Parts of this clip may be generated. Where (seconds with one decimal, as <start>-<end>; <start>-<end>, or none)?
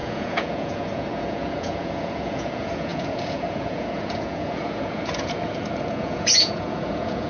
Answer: 0.0-7.3